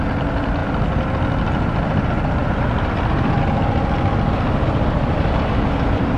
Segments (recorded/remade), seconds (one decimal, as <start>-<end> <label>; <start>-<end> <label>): 0.0-6.2 recorded